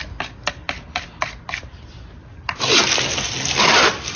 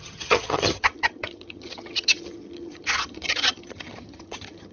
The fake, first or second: second